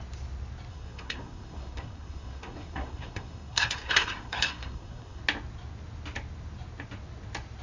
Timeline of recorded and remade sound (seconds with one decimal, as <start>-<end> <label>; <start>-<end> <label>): 0.0-0.7 recorded; 0.7-5.2 remade; 5.2-7.6 recorded